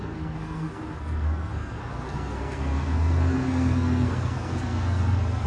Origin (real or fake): fake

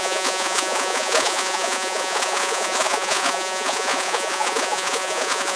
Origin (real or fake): fake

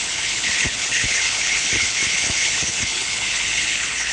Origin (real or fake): fake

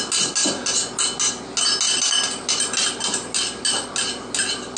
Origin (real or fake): real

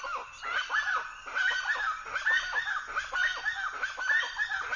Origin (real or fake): real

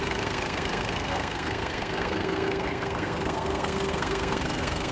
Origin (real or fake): fake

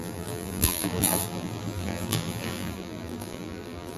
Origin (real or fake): fake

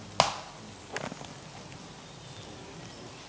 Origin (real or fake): real